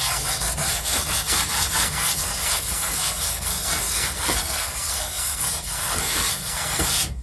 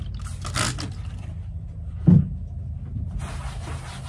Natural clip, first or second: second